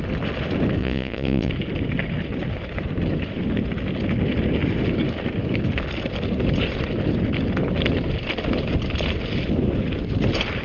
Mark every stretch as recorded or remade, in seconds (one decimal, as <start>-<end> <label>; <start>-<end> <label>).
0.0-0.8 recorded; 0.8-1.5 remade; 1.5-10.6 recorded